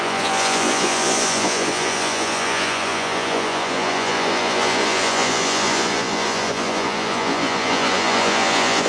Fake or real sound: fake